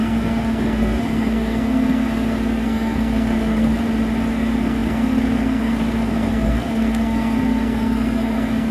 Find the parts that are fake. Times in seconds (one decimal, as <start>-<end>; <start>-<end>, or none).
0.0-3.7; 4.3-8.7

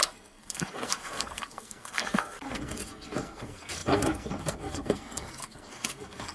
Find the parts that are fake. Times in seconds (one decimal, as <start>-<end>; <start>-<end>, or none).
0.0-6.3

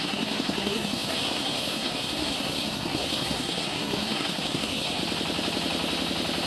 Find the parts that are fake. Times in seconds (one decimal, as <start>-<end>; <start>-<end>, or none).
0.0-5.0

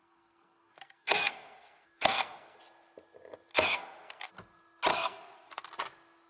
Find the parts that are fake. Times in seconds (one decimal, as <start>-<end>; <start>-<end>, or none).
0.0-2.6; 3.5-4.3; 4.9-5.7

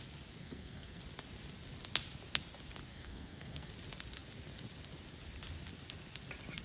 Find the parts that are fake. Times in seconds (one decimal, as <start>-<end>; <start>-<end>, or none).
0.4-1.0; 2.9-3.7

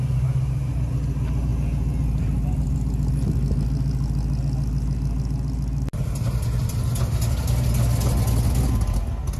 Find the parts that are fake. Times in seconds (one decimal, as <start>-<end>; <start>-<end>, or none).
none

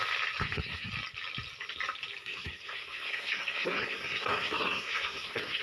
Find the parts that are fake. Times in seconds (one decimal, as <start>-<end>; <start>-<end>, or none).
0.4-0.9; 2.2-5.6

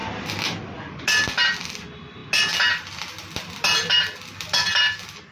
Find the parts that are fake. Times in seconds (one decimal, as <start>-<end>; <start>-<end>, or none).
none